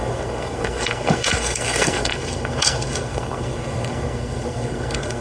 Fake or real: fake